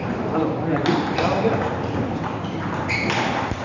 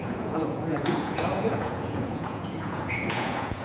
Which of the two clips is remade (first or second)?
second